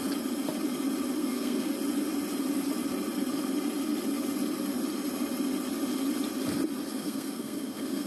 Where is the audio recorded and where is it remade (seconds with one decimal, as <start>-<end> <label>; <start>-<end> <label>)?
0.0-1.2 recorded; 1.2-1.7 remade; 1.7-6.9 recorded; 6.9-8.1 remade